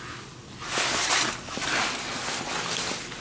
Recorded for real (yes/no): yes